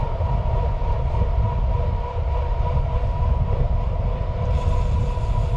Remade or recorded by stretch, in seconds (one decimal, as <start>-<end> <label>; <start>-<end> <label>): 0.0-1.2 remade; 1.2-5.6 recorded